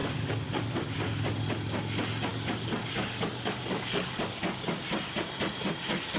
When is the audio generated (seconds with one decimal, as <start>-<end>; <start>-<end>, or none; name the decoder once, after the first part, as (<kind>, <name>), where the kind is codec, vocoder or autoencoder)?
0.0-0.7 (codec, DAC); 2.3-4.7